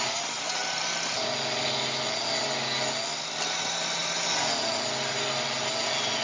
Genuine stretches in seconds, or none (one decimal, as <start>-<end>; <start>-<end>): 0.0-6.2